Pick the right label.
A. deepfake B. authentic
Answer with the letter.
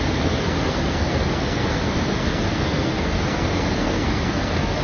A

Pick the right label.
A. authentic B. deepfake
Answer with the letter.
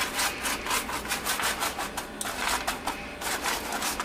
A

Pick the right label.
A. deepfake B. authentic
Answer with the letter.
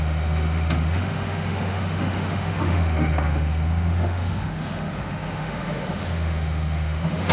A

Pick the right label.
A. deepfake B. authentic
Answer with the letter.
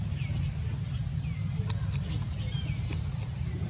B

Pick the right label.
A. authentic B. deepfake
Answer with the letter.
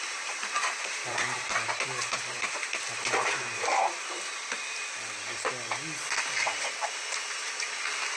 B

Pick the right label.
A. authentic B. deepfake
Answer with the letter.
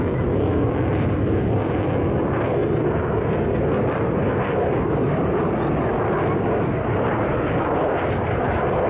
A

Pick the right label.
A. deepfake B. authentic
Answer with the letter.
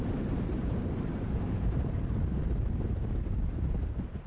A